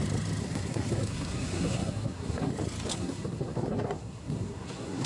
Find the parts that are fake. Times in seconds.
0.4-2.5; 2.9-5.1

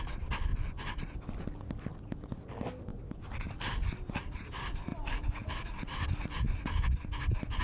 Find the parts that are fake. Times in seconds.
0.5-1.0

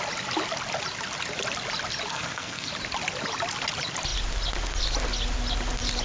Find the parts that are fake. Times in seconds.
2.1-2.7

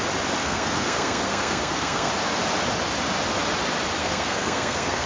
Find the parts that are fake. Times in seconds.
0.4-2.1; 4.0-5.1

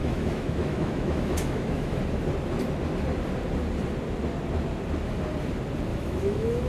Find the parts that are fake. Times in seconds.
0.0-2.0; 5.9-6.7

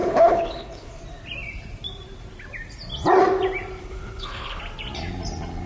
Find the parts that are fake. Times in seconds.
0.0-1.0; 3.8-4.6

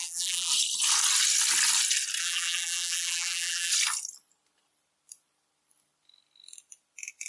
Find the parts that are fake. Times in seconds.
0.0-0.5; 2.2-3.7

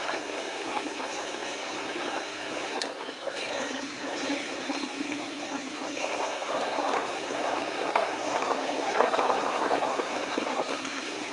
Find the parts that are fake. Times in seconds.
0.0-11.3